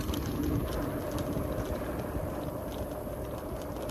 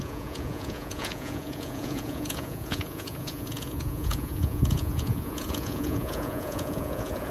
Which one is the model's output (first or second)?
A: second